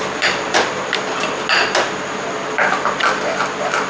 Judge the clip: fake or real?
real